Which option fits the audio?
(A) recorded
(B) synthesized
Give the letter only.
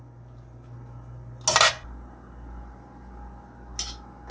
A